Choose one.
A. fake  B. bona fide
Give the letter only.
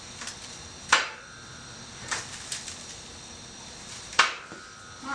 A